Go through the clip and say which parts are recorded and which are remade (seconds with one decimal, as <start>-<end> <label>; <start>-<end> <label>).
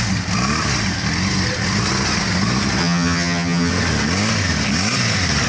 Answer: 0.0-2.8 recorded; 2.8-3.7 remade; 3.7-5.5 recorded